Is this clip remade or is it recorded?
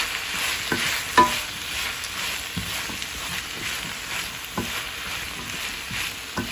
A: recorded